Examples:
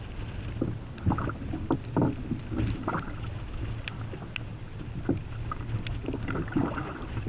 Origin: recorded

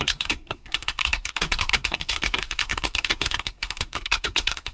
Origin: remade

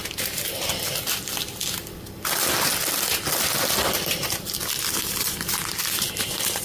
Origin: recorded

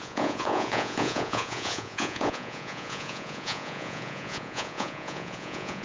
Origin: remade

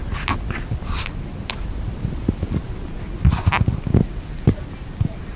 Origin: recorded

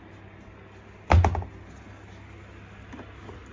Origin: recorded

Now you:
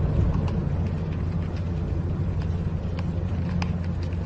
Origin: recorded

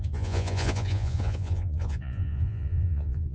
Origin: remade